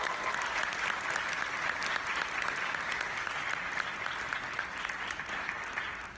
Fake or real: real